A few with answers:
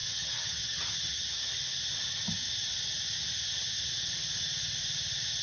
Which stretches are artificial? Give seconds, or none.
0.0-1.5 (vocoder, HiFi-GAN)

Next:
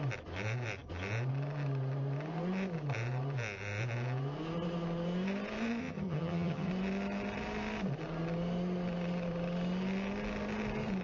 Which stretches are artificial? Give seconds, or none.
5.8-6.7 (vocoder, HiFi-GAN)

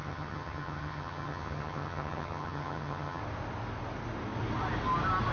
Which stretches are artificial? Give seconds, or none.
0.0-3.2 (vocoder, HiFi-GAN)

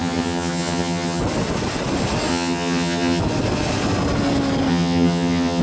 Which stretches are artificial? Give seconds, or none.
0.0-1.2 (vocoder, HiFi-GAN); 2.3-3.2; 4.7-5.6

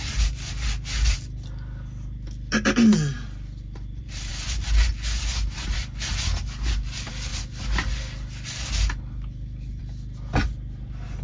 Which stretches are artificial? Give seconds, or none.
none

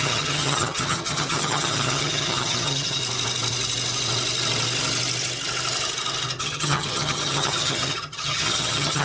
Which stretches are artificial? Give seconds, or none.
0.0-3.0 (vocoder, HiFi-GAN); 6.4-9.0

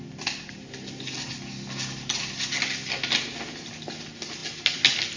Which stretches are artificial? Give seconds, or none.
none